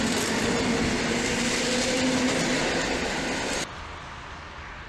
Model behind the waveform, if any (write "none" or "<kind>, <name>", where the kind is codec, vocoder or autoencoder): none